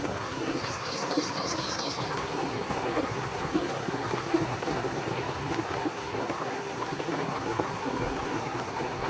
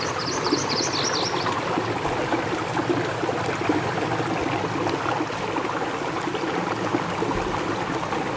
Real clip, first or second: second